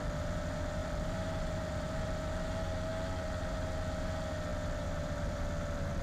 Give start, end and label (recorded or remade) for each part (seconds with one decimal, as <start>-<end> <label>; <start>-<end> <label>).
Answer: 0.0-0.8 recorded; 0.8-2.1 remade; 2.1-2.9 recorded; 2.9-3.7 remade; 3.7-4.5 recorded; 4.5-6.0 remade